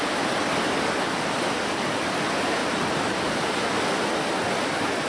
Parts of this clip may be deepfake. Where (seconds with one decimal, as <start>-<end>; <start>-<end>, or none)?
none